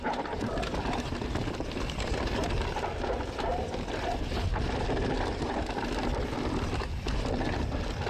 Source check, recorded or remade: recorded